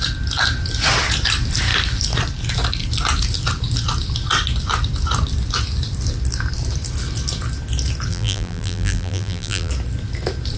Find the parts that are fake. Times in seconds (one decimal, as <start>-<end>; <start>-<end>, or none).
8.1-9.7